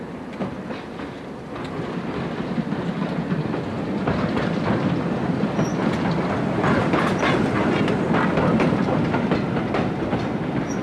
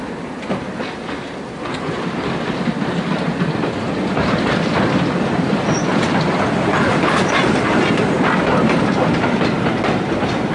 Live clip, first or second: first